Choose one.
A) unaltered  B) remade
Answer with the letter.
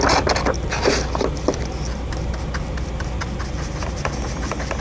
A